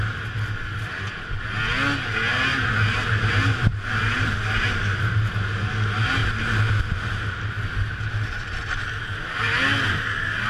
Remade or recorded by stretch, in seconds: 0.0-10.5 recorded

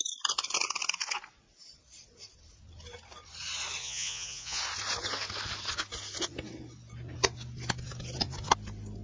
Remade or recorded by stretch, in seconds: 0.0-3.8 recorded; 3.8-4.6 remade; 4.6-9.0 recorded

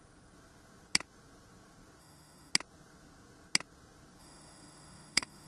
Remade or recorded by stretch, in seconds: 0.0-2.0 recorded; 2.0-2.5 remade; 2.5-4.2 recorded; 4.2-5.5 remade

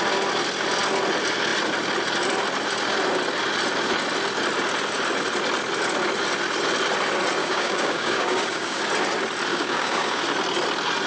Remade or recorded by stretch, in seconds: 0.0-7.4 recorded; 7.4-8.8 remade; 8.8-9.5 recorded; 9.5-10.2 remade; 10.2-11.1 recorded

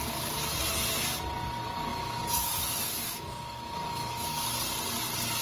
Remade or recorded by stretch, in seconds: 0.0-1.9 recorded; 1.9-4.6 remade; 4.6-5.4 recorded

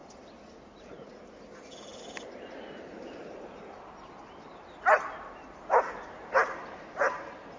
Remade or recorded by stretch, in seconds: 0.0-7.6 recorded